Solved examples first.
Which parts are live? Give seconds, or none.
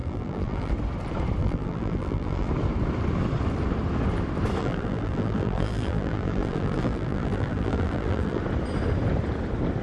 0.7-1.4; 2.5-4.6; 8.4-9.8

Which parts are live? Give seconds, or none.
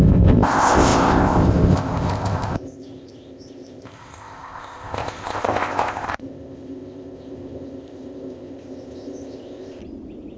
9.8-10.4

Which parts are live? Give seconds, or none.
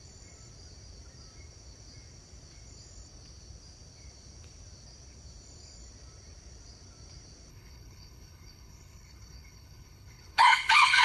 0.0-7.5